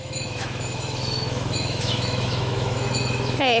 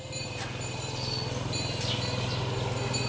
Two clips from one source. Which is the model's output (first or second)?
first